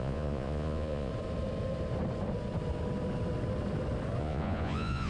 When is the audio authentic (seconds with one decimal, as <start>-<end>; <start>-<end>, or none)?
1.1-4.2